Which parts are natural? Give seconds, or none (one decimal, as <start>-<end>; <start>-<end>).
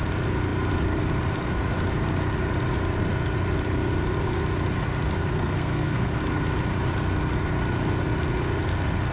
0.0-5.3; 6.2-9.1